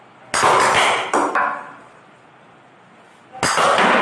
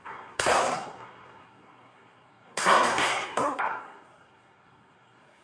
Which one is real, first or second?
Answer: first